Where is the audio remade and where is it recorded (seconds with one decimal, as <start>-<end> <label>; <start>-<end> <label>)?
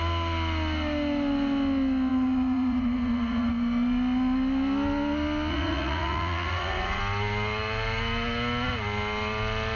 0.0-2.1 recorded; 2.1-3.5 remade; 3.5-5.5 recorded; 5.5-7.0 remade; 7.0-9.8 recorded